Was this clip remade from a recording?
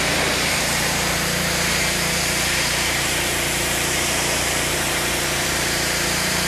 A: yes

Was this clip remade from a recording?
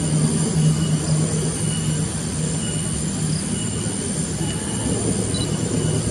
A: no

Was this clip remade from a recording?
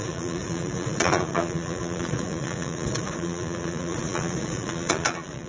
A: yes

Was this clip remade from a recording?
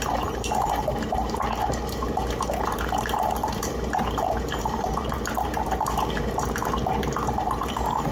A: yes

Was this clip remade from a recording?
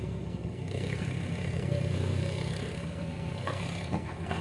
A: yes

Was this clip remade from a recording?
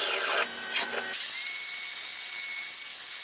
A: no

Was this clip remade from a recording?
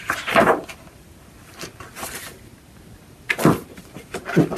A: no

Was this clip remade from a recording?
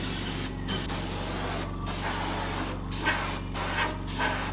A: no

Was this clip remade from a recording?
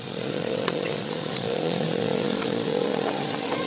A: yes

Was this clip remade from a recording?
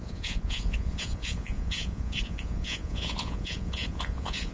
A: yes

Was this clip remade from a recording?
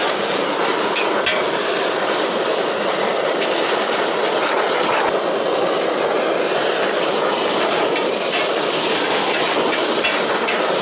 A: no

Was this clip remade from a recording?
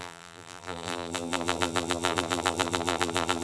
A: yes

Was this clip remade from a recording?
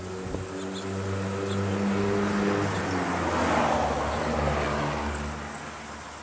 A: no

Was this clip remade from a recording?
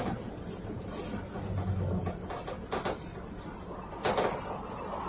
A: no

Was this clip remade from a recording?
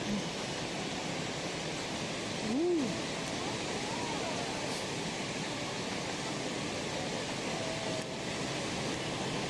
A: no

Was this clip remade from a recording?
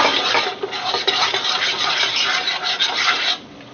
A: no